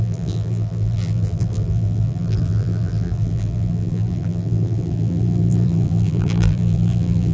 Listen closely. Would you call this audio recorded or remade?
remade